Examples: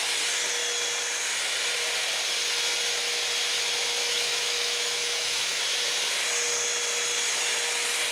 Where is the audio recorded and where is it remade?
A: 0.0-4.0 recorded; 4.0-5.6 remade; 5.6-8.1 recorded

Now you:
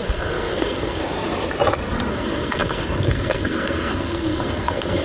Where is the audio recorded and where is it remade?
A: 0.0-1.0 remade; 1.0-2.1 recorded; 2.1-5.0 remade

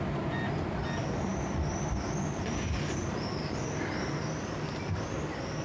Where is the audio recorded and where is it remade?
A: 0.0-5.6 remade

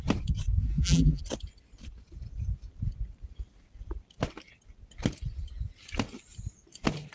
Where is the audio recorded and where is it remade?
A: 0.0-0.6 recorded; 0.6-1.2 remade; 1.2-7.1 recorded

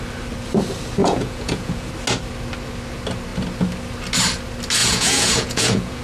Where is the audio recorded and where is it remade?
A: 0.0-1.0 recorded; 1.0-1.9 remade; 1.9-4.8 recorded; 4.8-6.0 remade